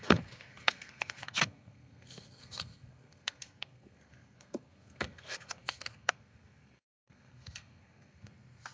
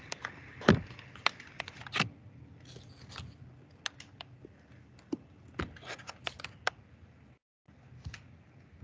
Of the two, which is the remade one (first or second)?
first